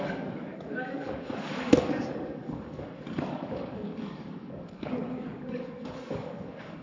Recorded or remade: remade